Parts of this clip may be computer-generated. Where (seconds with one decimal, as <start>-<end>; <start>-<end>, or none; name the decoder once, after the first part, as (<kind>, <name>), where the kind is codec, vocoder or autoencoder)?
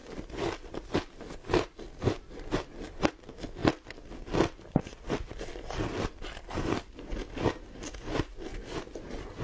3.6-7.1 (vocoder, BigVGAN v2)